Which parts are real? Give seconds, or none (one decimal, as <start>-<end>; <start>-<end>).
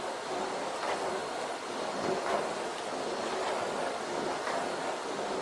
0.0-5.4